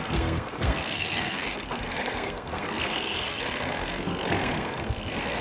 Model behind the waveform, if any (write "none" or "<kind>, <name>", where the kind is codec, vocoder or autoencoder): codec, SNAC